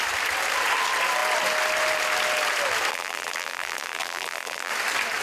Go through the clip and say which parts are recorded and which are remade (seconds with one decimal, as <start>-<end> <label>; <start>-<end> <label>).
0.0-2.9 recorded; 2.9-4.7 remade; 4.7-5.2 recorded